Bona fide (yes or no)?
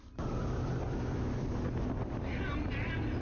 yes